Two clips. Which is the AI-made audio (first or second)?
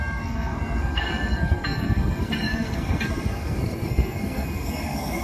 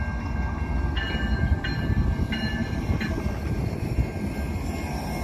first